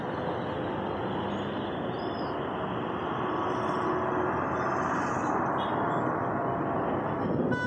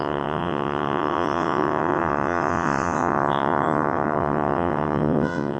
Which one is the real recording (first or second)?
first